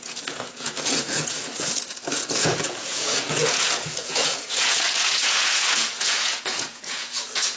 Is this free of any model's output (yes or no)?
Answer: no